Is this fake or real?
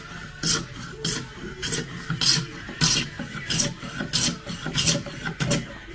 real